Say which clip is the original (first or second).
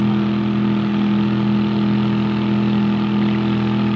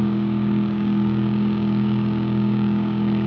first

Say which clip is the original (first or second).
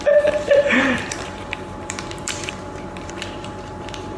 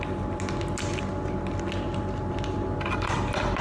second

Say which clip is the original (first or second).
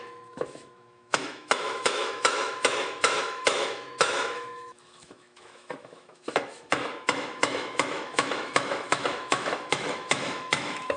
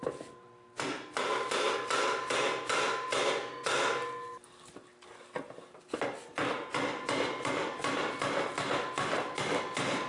second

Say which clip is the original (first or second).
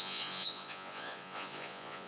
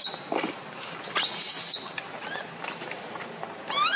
second